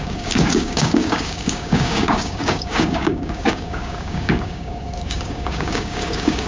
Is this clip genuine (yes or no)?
no